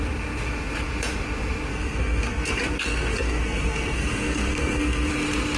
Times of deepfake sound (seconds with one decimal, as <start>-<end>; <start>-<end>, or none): 1.7-5.1